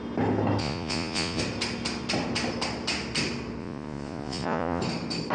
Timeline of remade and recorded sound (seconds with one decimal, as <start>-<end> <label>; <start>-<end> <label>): 0.0-0.6 recorded; 0.6-1.4 remade; 1.4-3.6 recorded; 3.6-4.8 remade; 4.8-5.3 recorded